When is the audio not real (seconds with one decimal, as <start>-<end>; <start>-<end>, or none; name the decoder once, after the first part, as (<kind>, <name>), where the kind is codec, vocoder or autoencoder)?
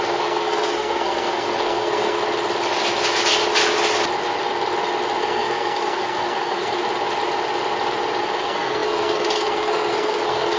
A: 0.0-2.2 (codec, SNAC); 5.2-6.8; 8.2-10.6